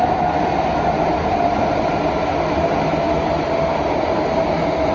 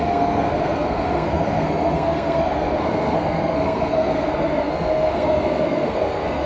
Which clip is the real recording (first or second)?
first